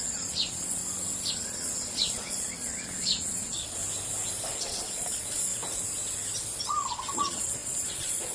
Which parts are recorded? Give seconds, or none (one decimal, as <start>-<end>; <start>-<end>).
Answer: 0.8-1.3; 3.8-4.5; 5.5-6.6